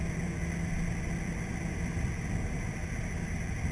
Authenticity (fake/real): real